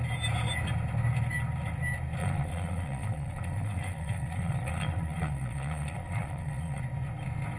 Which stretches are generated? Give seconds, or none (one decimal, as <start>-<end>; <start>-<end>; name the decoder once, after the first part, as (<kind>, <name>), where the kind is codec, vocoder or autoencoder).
2.2-6.8 (vocoder, Vocos)